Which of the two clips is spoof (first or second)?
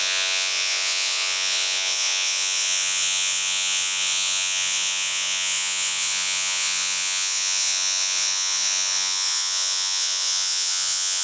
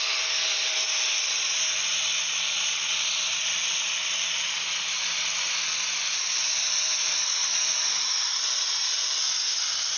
first